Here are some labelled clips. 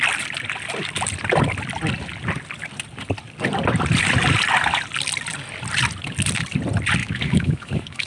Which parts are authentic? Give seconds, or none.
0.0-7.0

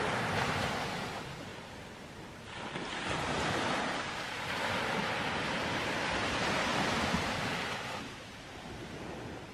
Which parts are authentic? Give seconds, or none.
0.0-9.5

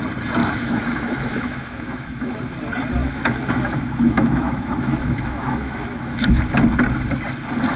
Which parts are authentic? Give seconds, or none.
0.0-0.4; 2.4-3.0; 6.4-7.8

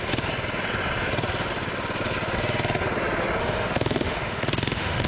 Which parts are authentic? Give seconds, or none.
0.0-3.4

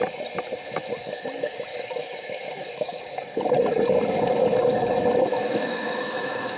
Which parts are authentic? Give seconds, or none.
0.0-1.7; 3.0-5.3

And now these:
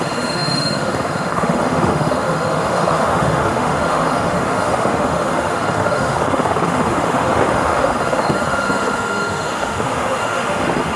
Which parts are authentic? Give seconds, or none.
none

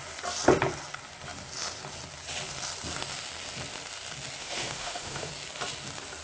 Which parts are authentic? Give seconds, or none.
0.0-4.4; 5.3-6.2